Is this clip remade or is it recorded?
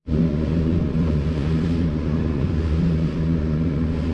remade